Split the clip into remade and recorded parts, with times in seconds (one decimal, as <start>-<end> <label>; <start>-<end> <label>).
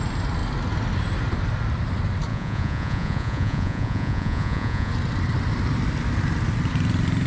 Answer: 0.0-2.3 recorded; 2.3-4.9 remade; 4.9-7.3 recorded